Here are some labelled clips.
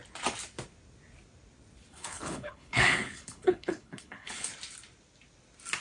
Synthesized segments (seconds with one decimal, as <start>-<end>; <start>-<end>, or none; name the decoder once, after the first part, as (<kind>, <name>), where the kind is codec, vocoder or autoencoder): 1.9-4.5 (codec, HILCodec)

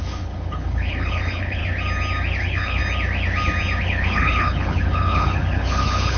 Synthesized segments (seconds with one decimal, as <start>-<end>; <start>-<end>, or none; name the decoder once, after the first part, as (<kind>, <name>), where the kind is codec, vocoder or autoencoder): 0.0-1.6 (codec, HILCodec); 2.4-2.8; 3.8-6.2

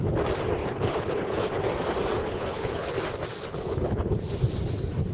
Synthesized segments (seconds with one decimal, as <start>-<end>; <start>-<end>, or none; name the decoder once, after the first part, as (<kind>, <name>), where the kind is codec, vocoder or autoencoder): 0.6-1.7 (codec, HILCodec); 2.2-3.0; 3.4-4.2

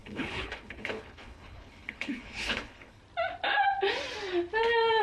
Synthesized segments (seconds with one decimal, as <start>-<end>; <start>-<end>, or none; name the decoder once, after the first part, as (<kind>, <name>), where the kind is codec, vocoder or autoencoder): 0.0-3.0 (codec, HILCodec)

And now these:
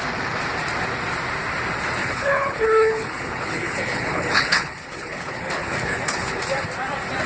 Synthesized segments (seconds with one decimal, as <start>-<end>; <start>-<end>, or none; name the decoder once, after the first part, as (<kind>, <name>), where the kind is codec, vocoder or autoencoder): 2.0-6.4 (codec, HILCodec)

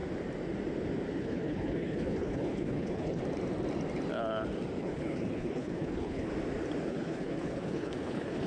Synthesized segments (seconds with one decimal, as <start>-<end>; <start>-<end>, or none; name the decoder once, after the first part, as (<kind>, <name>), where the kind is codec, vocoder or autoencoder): 1.2-3.2 (codec, HILCodec); 4.8-6.3; 6.9-8.5

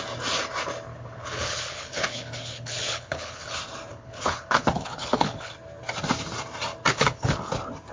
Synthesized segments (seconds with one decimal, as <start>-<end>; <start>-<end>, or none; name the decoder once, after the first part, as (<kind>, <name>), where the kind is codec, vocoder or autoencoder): 0.9-3.5 (codec, HILCodec); 3.9-5.5; 6.9-7.5